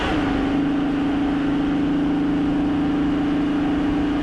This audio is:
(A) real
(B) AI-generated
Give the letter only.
A